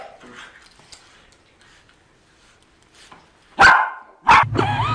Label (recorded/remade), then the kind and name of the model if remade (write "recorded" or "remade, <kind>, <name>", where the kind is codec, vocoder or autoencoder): recorded